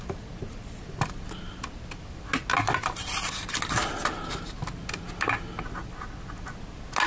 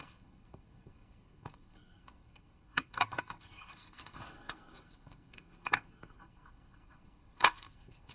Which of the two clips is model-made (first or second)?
second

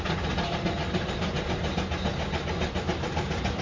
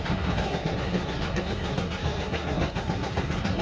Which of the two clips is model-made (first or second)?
second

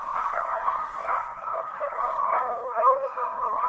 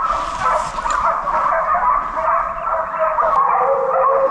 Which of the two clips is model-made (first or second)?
first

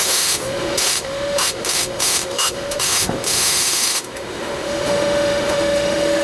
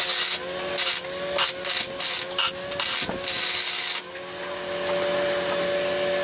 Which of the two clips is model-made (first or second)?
first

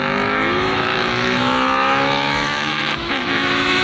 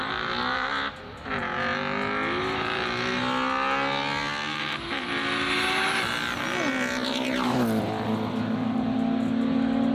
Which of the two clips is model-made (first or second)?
first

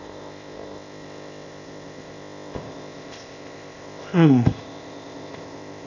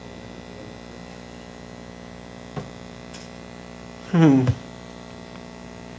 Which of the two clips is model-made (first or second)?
first